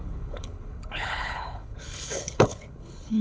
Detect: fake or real fake